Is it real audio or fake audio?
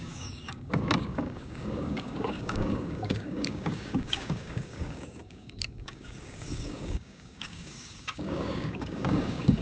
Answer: fake